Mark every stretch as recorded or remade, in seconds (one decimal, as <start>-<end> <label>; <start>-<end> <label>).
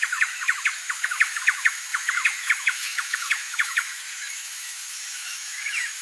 0.0-6.0 remade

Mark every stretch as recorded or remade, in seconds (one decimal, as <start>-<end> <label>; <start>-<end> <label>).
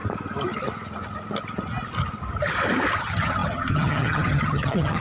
0.0-3.0 recorded; 3.0-5.0 remade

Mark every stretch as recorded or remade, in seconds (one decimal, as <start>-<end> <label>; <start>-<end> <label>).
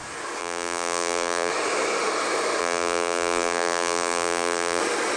0.0-0.4 recorded; 0.4-1.5 remade; 1.5-2.6 recorded; 2.6-4.8 remade; 4.8-5.2 recorded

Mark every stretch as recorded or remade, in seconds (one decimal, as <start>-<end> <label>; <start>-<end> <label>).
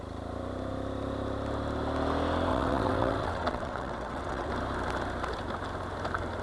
0.0-2.5 recorded; 2.5-4.5 remade; 4.5-6.4 recorded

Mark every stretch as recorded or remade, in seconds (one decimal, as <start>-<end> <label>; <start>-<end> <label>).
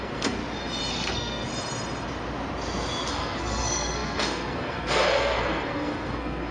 0.0-0.4 remade; 0.4-0.9 recorded; 0.9-1.5 remade; 1.5-3.1 recorded; 3.1-6.5 remade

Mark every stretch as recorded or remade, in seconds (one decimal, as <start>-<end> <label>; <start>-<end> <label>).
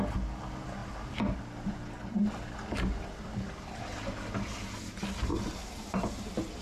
0.0-5.3 recorded; 5.3-6.6 remade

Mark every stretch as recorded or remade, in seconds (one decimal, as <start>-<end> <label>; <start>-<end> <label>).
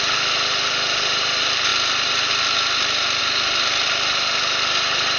0.0-5.2 recorded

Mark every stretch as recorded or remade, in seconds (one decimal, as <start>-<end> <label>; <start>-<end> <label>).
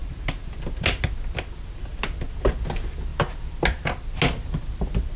0.0-5.2 recorded